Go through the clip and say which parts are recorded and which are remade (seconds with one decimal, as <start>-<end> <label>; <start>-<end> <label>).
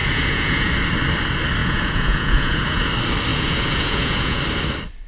0.0-0.7 remade; 0.7-1.6 recorded; 1.6-2.9 remade; 2.9-3.3 recorded; 3.3-4.4 remade; 4.4-5.1 recorded